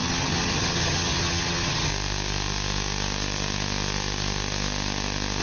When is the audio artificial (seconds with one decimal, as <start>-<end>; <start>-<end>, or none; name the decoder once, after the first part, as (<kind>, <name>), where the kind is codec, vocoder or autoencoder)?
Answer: 0.0-1.9 (vocoder, HiFi-GAN)